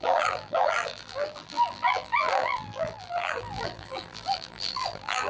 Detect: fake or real fake